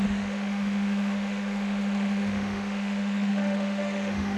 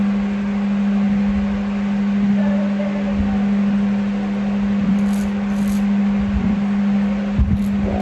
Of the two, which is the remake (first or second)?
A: first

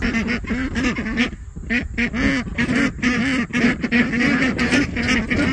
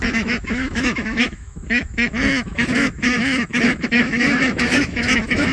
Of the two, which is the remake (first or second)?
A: second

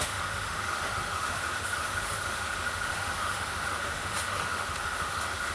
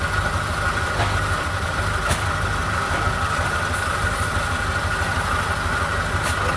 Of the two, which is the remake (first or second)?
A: first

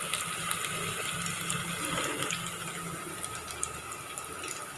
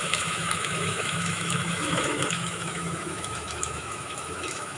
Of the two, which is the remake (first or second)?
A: second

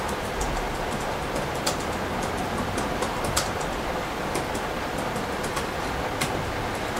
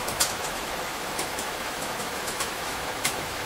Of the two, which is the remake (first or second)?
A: second